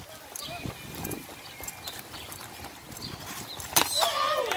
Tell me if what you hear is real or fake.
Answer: fake